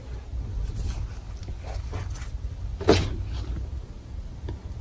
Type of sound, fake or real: real